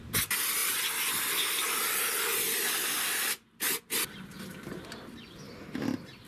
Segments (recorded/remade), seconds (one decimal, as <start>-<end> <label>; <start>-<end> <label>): 0.0-6.3 recorded